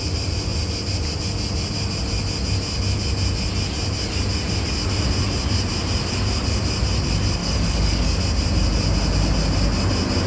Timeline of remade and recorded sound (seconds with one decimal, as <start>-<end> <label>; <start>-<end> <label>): 0.0-7.4 recorded; 7.4-8.2 remade; 8.2-10.3 recorded